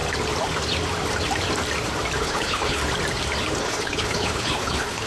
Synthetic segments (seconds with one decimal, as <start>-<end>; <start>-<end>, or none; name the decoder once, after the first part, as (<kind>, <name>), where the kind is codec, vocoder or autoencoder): 2.2-2.8 (codec, HILCodec); 3.6-5.1